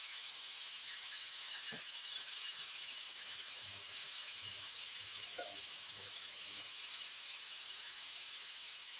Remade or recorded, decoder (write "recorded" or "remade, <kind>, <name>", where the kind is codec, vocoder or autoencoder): remade, autoencoder, DAC-VAE